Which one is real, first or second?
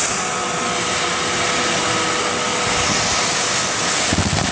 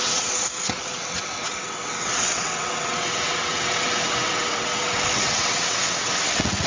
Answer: first